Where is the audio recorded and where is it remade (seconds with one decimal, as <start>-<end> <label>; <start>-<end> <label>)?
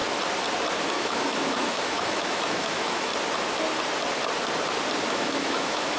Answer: 0.0-0.9 recorded; 0.9-3.1 remade; 3.1-5.1 recorded; 5.1-6.0 remade